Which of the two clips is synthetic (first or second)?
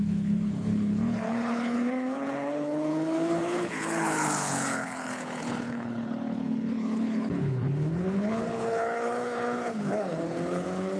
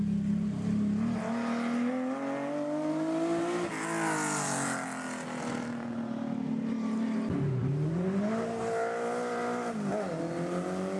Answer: first